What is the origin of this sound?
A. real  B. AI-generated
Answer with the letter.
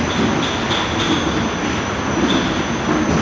A